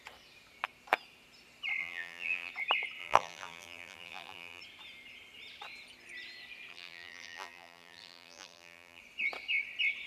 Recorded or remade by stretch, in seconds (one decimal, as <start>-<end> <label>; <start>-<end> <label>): 0.0-1.8 recorded; 1.8-2.5 remade; 2.5-3.0 recorded; 3.0-4.6 remade; 4.6-6.7 recorded; 6.7-9.0 remade; 9.0-10.1 recorded